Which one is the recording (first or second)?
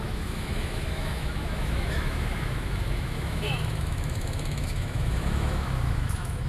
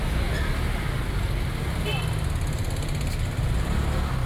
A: second